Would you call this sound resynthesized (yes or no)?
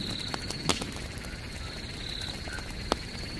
no